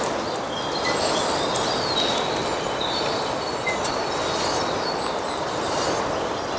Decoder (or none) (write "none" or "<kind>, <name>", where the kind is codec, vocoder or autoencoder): none